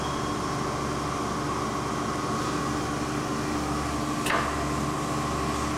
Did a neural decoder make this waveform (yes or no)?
no